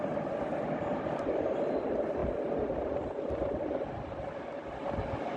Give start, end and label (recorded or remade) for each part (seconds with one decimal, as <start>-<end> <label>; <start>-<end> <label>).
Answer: 0.0-5.4 recorded